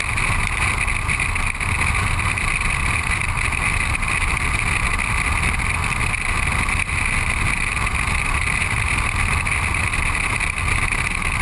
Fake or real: real